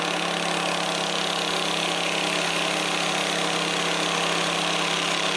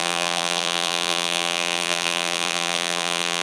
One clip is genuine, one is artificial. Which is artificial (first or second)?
second